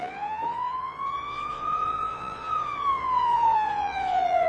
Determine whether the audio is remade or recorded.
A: remade